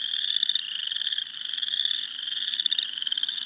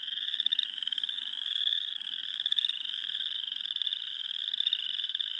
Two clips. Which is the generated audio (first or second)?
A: second